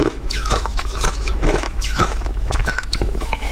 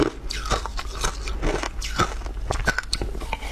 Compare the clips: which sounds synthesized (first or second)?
first